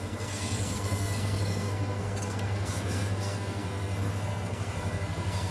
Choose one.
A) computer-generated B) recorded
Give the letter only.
A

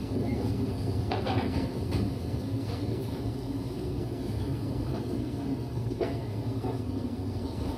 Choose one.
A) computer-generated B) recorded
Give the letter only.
A